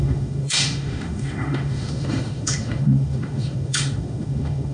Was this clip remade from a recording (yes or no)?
yes